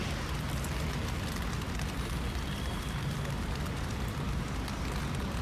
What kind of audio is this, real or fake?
real